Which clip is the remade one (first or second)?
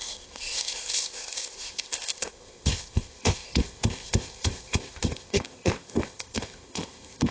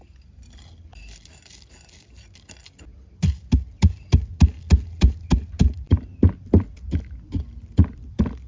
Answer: first